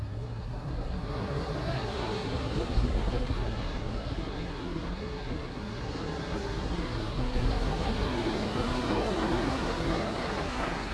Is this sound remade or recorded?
remade